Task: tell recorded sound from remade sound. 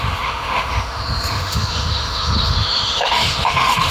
remade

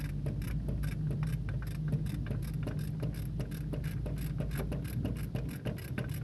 recorded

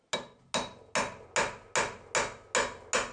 recorded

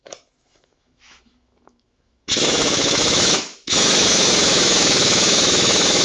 remade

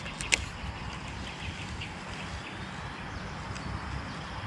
recorded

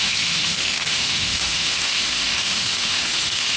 remade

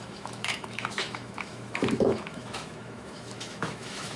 remade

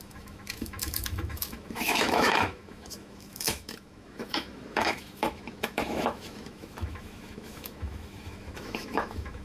remade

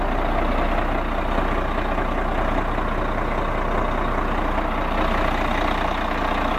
recorded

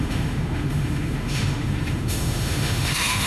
remade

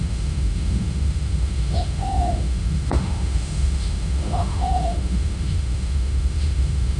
remade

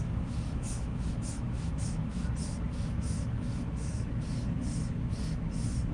remade